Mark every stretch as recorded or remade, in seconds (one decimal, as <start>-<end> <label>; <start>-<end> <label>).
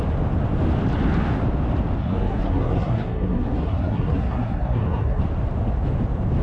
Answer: 0.0-2.0 recorded; 2.0-5.2 remade; 5.2-6.4 recorded